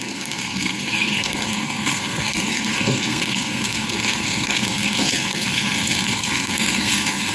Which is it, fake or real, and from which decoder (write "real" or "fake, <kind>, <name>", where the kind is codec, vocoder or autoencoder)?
fake, codec, SNAC